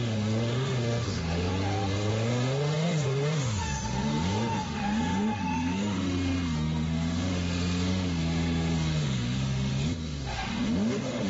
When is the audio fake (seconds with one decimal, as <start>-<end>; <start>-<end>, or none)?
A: 0.0-1.5; 2.1-11.3